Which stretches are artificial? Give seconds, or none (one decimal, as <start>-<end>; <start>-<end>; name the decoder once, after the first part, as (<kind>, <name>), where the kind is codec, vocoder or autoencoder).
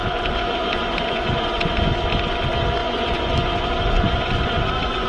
0.0-1.8 (vocoder, Vocos); 2.8-5.1